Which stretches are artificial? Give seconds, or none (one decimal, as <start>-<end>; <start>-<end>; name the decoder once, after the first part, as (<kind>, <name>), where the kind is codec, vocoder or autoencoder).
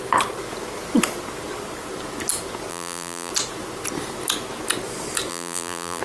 2.7-3.3 (vocoder, BigVGAN v2); 5.3-6.0